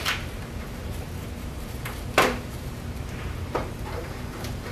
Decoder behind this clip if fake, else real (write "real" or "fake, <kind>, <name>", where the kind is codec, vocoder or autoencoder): fake, vocoder, BigVGAN v2